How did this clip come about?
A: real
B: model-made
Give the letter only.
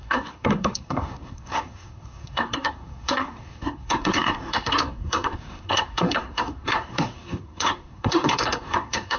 B